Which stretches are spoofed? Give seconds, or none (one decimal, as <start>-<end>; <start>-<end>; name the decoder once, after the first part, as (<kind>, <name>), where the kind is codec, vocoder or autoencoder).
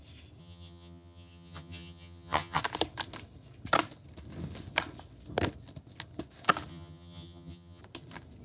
0.4-2.6 (vocoder, HiFi-GAN); 6.7-7.8